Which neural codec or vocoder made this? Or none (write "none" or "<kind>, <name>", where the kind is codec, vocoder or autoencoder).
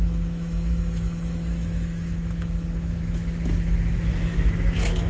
autoencoder, DAC-VAE